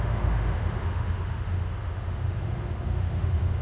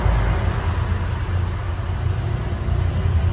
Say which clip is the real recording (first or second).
second